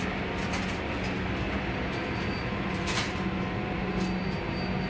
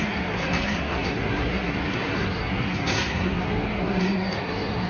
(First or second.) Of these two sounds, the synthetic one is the second